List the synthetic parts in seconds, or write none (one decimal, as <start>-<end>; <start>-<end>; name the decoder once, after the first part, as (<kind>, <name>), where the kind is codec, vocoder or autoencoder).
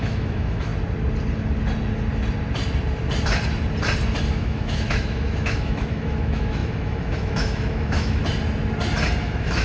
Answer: 0.0-0.7 (autoencoder, DAC-VAE); 4.3-8.2; 9.2-9.6